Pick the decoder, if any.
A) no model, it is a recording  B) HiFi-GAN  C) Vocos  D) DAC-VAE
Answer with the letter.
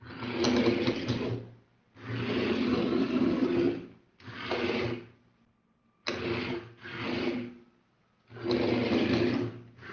A